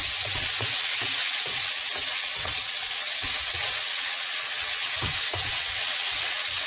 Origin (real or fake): fake